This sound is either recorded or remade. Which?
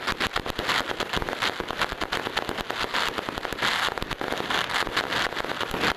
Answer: recorded